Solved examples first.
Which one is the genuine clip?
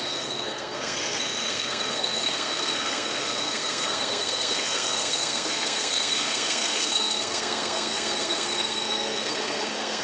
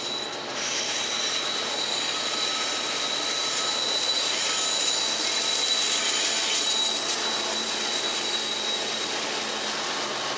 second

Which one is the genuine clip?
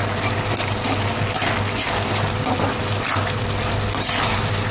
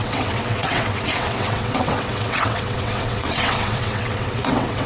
first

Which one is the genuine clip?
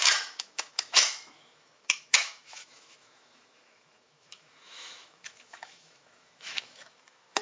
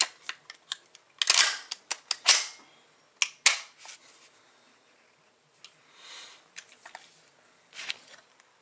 second